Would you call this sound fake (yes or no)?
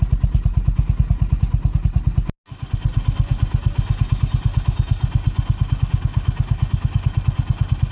no